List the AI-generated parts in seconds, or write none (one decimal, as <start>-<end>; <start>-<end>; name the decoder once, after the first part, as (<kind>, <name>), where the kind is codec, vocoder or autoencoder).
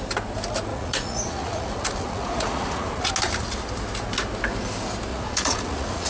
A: 0.7-3.1 (vocoder, Vocos); 5.1-6.1